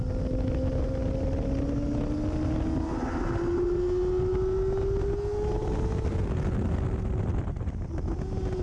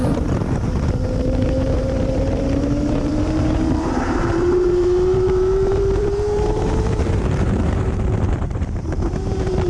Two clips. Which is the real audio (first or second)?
first